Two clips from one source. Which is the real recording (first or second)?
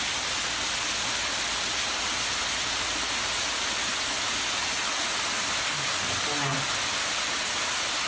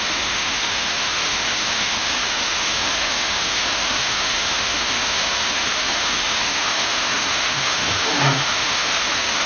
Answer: first